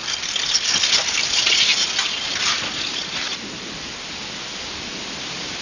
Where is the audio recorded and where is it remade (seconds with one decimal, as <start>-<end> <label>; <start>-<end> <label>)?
0.0-5.6 recorded